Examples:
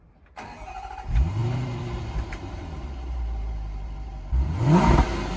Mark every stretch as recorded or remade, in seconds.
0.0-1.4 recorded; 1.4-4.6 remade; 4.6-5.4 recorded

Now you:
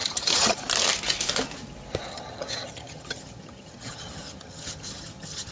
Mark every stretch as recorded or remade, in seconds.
0.0-0.6 remade; 0.6-2.1 recorded; 2.1-5.5 remade

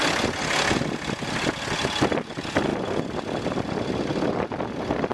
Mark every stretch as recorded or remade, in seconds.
0.0-5.1 recorded

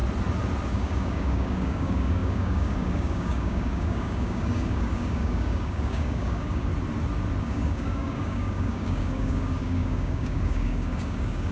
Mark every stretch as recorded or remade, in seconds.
0.0-0.7 recorded; 0.7-6.7 remade; 6.7-7.4 recorded; 7.4-11.5 remade

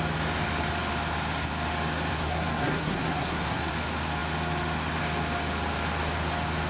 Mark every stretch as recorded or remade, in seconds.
0.0-2.1 recorded; 2.1-3.7 remade; 3.7-6.7 recorded

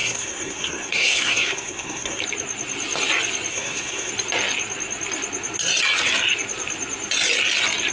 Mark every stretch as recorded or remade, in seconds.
0.0-2.2 remade; 2.2-3.5 recorded; 3.5-4.1 remade; 4.1-7.9 recorded

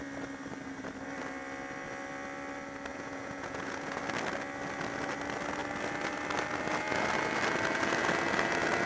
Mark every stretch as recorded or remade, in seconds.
0.0-2.9 recorded; 2.9-4.0 remade; 4.0-8.9 recorded